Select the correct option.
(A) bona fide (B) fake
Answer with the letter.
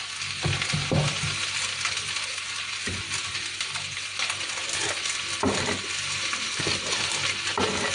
A